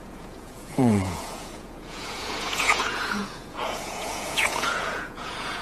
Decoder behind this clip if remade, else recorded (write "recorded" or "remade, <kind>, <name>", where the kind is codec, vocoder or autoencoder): remade, vocoder, Vocos